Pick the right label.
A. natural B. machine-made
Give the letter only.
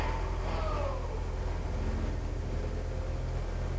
A